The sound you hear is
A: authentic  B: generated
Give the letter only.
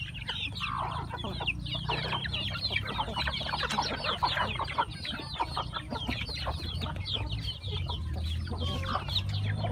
A